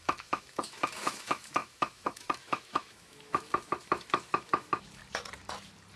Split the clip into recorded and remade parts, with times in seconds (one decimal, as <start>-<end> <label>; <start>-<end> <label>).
0.0-5.0 remade; 5.0-6.0 recorded